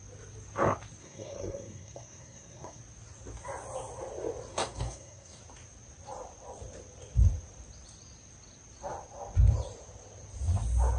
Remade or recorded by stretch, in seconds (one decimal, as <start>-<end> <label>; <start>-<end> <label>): 0.0-1.0 recorded; 1.0-2.8 remade; 2.8-4.5 recorded; 4.5-5.4 remade; 5.4-11.0 recorded